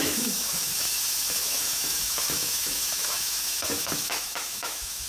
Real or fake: fake